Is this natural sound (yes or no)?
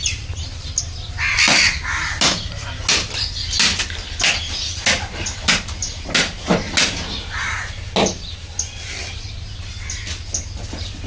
yes